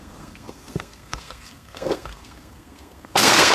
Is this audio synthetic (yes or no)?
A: yes